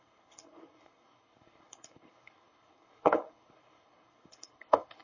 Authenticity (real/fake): fake